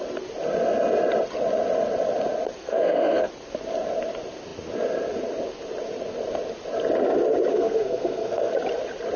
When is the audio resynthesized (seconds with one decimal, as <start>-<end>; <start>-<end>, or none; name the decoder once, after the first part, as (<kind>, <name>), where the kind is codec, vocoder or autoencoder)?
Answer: 2.6-3.3 (codec, SNAC); 7.5-8.5